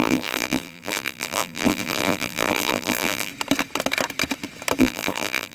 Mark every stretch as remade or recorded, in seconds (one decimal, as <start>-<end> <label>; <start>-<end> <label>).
0.0-3.3 remade; 3.3-4.8 recorded; 4.8-5.5 remade